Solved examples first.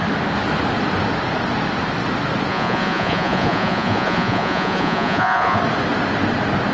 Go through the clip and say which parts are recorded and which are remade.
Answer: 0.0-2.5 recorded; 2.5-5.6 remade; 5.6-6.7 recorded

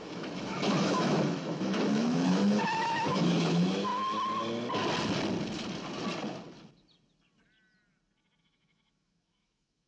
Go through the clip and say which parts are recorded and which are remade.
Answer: 0.0-3.9 remade; 3.9-8.4 recorded; 8.4-9.9 remade

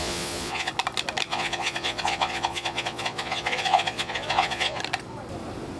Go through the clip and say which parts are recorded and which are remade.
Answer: 0.0-0.7 remade; 0.7-1.3 recorded; 1.3-4.8 remade; 4.8-5.8 recorded

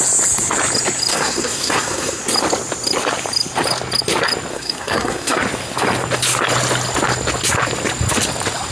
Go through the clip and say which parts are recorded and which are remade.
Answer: 0.0-1.1 recorded; 1.1-2.2 remade; 2.2-4.5 recorded; 4.5-5.4 remade; 5.4-8.7 recorded